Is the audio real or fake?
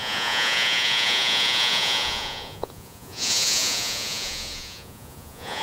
fake